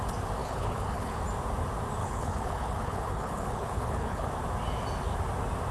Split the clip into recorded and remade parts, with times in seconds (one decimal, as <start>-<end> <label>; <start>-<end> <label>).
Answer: 0.0-0.4 recorded; 0.4-1.2 remade; 1.2-2.0 recorded; 2.0-4.3 remade; 4.3-5.7 recorded